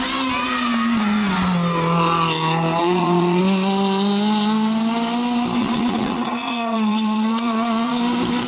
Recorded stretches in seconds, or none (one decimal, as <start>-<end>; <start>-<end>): 0.0-2.8; 3.4-5.6; 8.0-8.5